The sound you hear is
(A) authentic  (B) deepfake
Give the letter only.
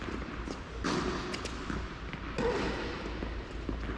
A